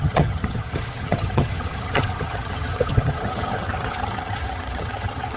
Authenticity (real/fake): fake